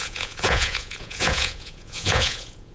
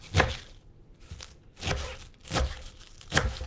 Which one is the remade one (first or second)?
first